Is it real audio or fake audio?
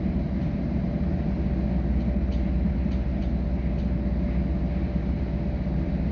real